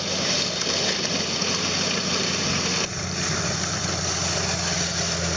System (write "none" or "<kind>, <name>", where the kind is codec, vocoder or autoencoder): none